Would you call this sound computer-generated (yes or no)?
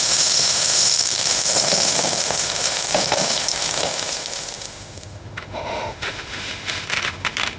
yes